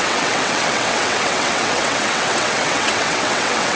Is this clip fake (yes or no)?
yes